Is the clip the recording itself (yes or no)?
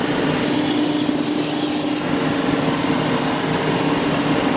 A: yes